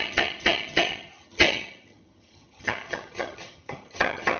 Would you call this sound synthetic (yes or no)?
yes